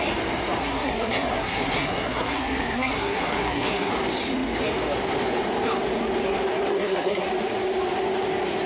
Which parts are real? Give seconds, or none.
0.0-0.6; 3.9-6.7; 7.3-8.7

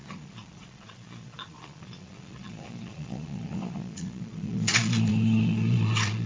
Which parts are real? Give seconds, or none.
none

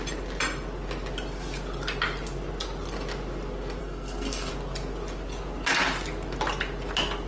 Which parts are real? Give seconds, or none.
0.0-3.8; 4.5-7.3

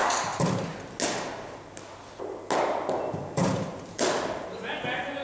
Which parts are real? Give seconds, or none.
1.0-3.4; 4.0-5.2